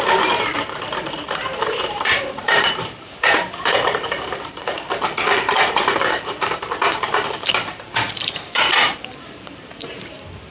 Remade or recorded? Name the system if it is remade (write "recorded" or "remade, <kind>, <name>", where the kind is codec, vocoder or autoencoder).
remade, vocoder, BigVGAN v2